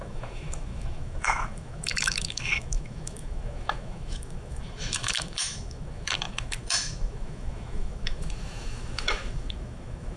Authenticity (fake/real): fake